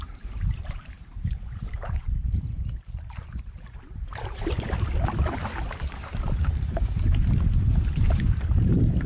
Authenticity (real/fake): fake